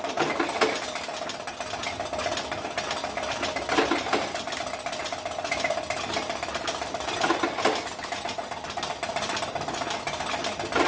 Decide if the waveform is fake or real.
real